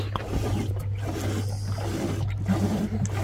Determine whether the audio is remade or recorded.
recorded